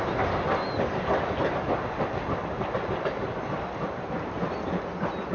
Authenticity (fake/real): real